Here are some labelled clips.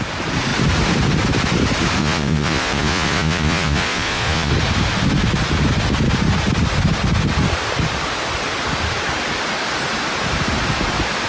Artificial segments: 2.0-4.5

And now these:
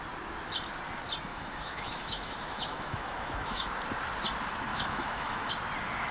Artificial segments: 1.3-3.7; 4.7-5.5

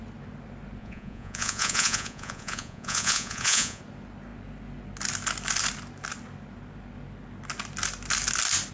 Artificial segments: 0.8-3.8

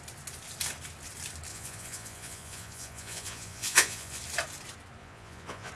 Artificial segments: 1.5-4.2; 5.0-5.7

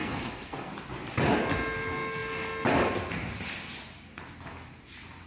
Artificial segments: 0.0-0.7

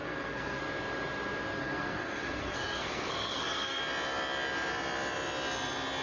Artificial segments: 0.0-0.6; 1.6-3.8

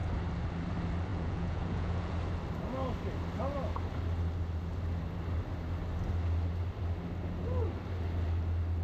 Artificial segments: 1.1-2.1